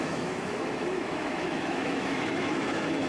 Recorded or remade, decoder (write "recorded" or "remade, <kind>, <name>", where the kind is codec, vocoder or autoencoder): remade, autoencoder, DAC-VAE